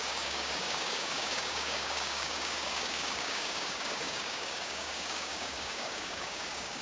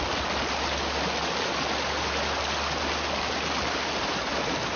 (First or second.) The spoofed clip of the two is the first